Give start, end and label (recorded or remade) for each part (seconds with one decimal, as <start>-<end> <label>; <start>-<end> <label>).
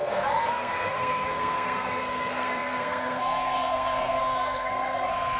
0.0-5.4 remade